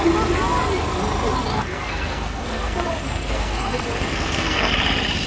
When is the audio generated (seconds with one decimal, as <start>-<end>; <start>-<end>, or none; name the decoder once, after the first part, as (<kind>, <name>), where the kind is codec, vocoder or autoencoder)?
1.5-4.7 (codec, SNAC)